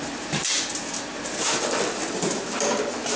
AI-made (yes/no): no